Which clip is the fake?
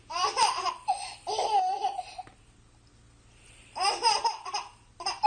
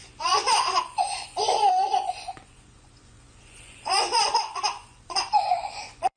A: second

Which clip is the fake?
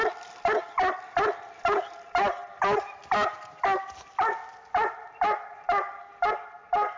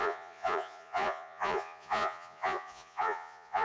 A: second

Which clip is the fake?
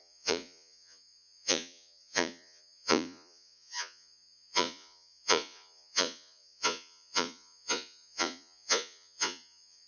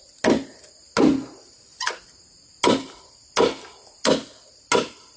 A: first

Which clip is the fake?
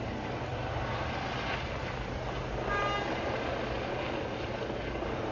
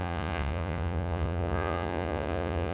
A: second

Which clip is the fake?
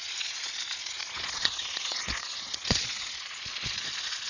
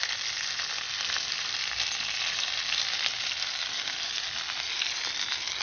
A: first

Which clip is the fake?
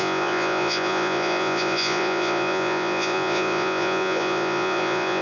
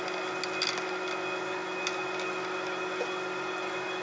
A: first